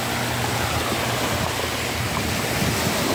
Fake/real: real